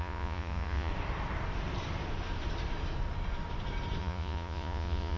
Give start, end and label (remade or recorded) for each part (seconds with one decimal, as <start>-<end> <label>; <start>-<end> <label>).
0.0-0.9 remade; 0.9-4.0 recorded; 4.0-5.2 remade